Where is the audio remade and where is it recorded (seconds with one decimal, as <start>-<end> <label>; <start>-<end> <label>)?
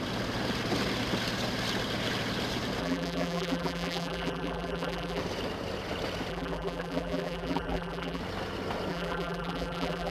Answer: 0.0-2.8 recorded; 2.8-5.2 remade; 5.2-6.3 recorded; 6.3-8.2 remade; 8.2-8.9 recorded; 8.9-10.1 remade